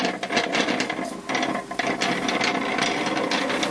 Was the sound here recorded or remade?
recorded